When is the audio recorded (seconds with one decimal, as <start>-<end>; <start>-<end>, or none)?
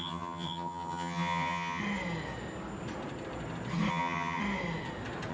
1.8-3.9; 4.4-5.3